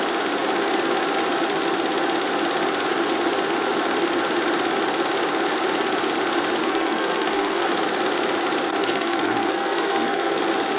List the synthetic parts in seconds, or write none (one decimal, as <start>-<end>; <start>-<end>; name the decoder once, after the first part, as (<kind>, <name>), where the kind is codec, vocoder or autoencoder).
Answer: 6.6-7.7 (codec, SNAC); 8.8-10.4

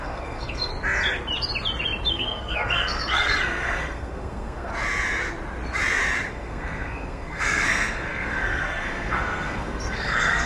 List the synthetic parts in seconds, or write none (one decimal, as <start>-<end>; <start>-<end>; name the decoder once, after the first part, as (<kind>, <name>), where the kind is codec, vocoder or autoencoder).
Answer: 0.0-0.7 (codec, SNAC); 2.1-4.7; 6.3-10.5

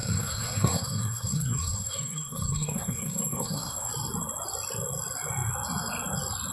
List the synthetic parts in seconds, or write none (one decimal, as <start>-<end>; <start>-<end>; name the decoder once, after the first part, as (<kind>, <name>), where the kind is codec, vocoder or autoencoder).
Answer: 0.0-3.9 (codec, SNAC)